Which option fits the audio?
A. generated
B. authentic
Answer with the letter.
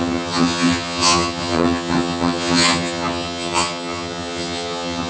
A